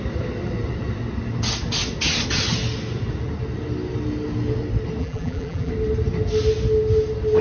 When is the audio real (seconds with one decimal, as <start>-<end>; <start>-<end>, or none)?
0.0-5.0; 5.7-7.4